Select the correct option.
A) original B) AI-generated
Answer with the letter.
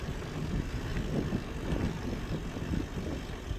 A